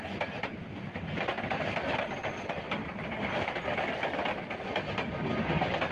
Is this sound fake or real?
real